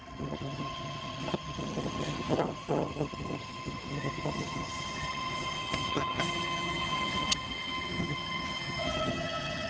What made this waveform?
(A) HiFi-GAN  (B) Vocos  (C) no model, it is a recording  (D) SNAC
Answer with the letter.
A